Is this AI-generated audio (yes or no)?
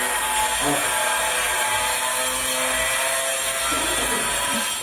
no